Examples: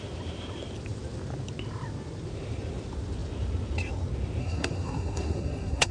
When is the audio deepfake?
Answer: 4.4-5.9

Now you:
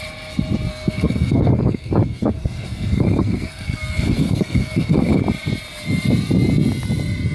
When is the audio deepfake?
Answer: 0.7-5.1

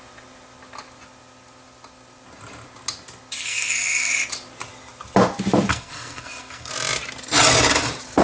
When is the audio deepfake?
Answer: 3.4-4.1; 5.7-6.7

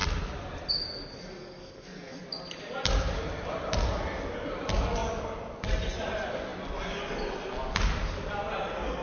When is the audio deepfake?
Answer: 1.4-2.2

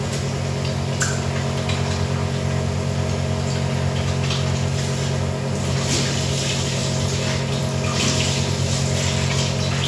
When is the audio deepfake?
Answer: none